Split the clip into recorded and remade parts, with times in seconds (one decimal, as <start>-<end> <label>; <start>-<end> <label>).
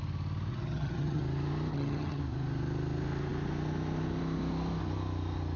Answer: 0.0-0.5 recorded; 0.5-1.2 remade; 1.2-1.7 recorded; 1.7-2.2 remade; 2.2-5.6 recorded